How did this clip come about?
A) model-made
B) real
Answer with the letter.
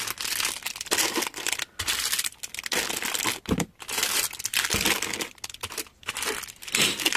B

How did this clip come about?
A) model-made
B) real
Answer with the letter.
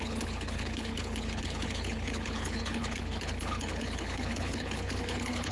A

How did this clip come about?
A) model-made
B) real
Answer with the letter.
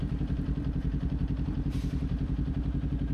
A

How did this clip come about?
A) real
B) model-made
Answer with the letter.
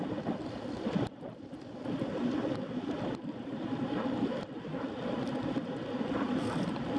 A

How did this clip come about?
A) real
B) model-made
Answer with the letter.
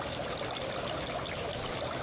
A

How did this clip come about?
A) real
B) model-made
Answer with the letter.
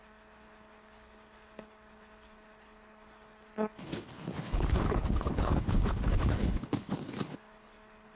B